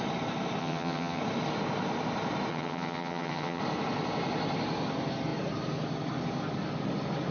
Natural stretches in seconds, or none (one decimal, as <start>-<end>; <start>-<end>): 0.0-0.6; 1.2-2.5; 3.6-7.3